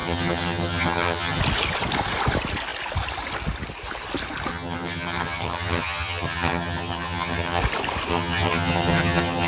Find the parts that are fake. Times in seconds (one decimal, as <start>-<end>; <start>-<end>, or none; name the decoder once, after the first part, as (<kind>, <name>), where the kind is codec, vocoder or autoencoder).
0.0-1.4 (vocoder, HiFi-GAN); 4.5-7.6; 8.1-9.5